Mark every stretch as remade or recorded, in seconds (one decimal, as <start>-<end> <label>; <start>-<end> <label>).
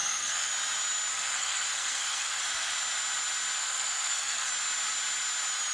0.0-0.5 remade; 0.5-1.1 recorded; 1.1-2.4 remade; 2.4-3.6 recorded; 3.6-4.5 remade; 4.5-5.7 recorded